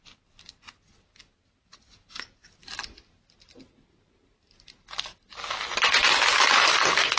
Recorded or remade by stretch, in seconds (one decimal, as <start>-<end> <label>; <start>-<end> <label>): 0.0-7.2 recorded